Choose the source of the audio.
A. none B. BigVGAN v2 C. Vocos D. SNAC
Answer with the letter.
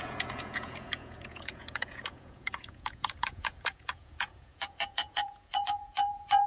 C